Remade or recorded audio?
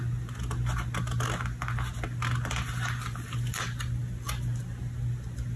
recorded